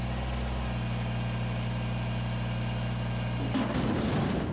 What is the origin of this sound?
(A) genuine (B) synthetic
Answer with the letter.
A